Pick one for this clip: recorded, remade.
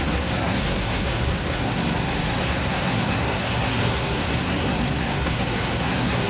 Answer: remade